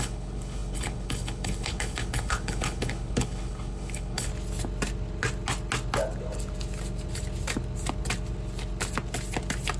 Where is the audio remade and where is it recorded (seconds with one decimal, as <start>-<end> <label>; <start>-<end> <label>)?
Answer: 0.0-4.3 remade; 4.3-9.8 recorded